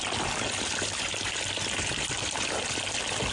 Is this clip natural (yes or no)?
yes